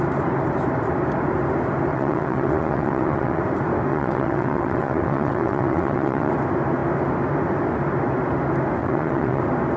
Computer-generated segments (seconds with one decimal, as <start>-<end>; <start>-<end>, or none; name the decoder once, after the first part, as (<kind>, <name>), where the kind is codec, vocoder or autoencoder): 1.9-3.4 (vocoder, WaveNeXt); 3.9-6.3; 8.8-9.4